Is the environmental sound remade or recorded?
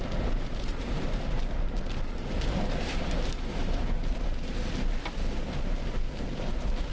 remade